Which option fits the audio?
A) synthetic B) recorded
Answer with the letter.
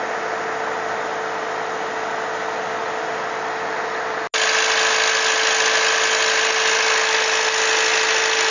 B